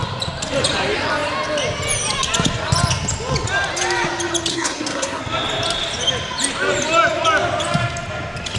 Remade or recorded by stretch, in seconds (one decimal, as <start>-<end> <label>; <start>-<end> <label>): 0.0-4.5 recorded; 4.5-5.2 remade; 5.2-8.6 recorded